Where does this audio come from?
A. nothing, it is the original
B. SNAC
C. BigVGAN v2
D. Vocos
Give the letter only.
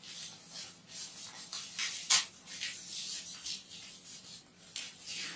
A